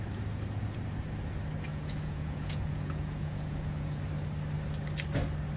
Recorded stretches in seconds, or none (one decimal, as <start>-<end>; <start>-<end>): 0.0-1.7; 4.0-5.6